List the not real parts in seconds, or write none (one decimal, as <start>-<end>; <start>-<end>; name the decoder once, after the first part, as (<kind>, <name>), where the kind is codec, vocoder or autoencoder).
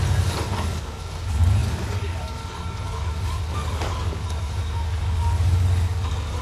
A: 0.0-6.4 (codec, DAC)